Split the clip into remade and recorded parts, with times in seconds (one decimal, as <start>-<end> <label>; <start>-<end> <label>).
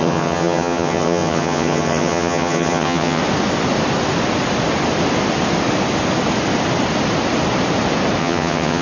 0.0-3.2 remade; 3.2-8.2 recorded; 8.2-8.8 remade